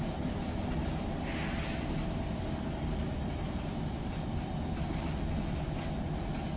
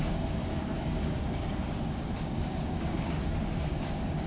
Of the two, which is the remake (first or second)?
second